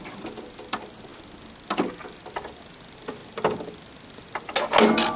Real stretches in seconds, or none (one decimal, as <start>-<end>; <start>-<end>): 0.0-5.2